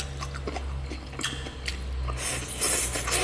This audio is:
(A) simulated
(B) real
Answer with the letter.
B